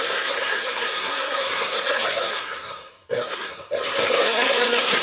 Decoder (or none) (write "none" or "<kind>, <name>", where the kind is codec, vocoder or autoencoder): codec, SNAC